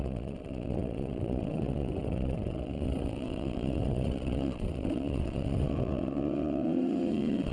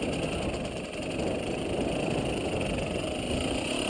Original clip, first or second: second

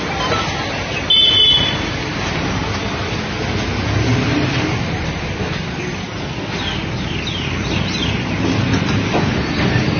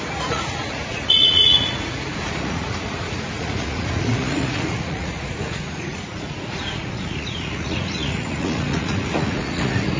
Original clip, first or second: first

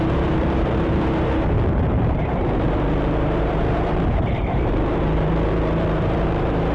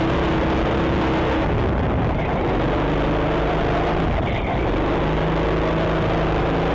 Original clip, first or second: second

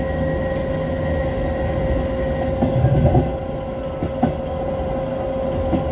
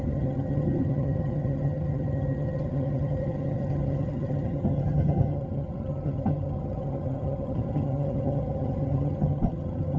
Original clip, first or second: first